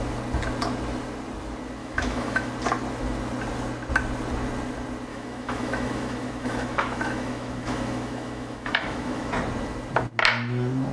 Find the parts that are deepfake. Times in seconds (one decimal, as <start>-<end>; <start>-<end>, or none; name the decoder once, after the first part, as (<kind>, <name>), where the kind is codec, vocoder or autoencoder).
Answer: 1.8-2.5 (autoencoder, DAC-VAE); 5.1-9.3